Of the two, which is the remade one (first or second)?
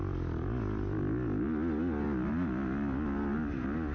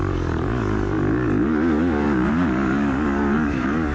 second